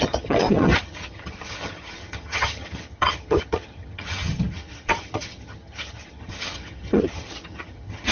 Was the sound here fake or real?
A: fake